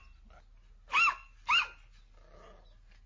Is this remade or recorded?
recorded